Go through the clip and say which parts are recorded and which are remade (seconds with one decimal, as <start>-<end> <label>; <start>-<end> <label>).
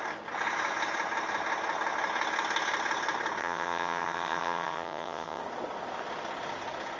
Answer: 0.0-3.4 recorded; 3.4-5.4 remade; 5.4-7.0 recorded